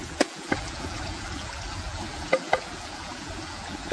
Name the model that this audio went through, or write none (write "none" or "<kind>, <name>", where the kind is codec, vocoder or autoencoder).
vocoder, BigVGAN v2